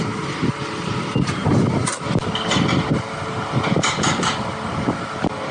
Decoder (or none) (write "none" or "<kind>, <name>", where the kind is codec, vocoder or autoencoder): none